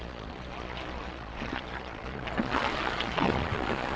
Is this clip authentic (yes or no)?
no